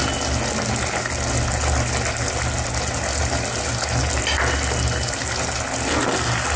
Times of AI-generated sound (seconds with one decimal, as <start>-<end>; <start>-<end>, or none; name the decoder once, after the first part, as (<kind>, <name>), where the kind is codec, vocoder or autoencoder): none